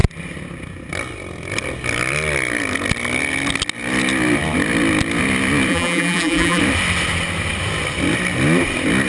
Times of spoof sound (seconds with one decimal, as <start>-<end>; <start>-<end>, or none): 5.7-6.6